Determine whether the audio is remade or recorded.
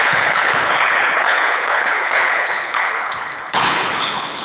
remade